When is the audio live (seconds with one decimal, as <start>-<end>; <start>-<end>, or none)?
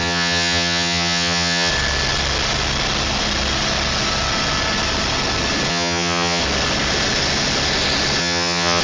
1.7-5.7; 6.4-8.2